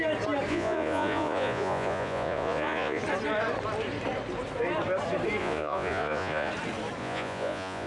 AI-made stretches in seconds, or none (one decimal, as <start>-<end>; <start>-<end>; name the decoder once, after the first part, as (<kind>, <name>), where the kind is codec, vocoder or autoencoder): 0.5-3.0 (vocoder, Vocos); 5.4-6.5; 7.0-7.9